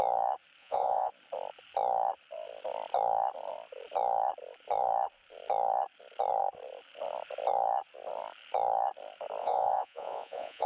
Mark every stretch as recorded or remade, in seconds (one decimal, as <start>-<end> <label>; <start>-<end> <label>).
0.0-0.6 recorded; 0.6-1.1 remade; 1.1-9.4 recorded; 9.4-10.7 remade